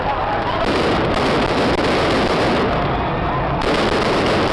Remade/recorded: recorded